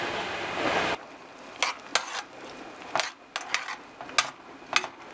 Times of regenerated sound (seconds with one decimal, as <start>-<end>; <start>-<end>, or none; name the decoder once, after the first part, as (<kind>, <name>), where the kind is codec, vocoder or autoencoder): none